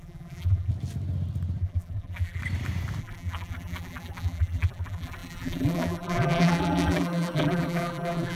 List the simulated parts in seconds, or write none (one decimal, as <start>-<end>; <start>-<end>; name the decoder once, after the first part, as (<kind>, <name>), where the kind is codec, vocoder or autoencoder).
0.0-0.7 (vocoder, BigVGAN v2); 1.6-2.4; 3.0-8.4